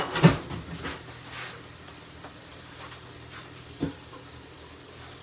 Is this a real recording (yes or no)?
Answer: no